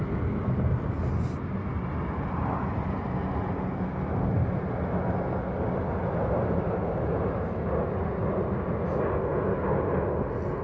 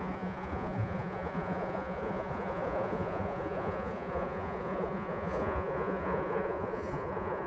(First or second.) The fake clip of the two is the second